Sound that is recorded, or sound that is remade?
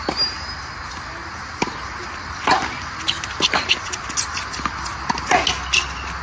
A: recorded